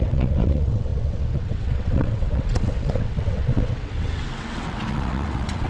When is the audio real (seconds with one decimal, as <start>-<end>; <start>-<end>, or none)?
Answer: none